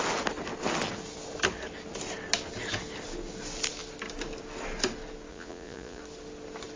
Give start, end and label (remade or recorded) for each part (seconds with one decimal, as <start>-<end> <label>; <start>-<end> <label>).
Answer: 0.0-5.3 recorded; 5.3-6.0 remade; 6.0-6.8 recorded